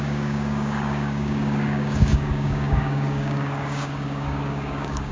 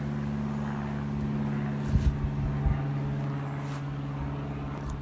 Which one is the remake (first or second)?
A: first